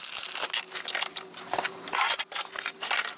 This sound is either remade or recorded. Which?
recorded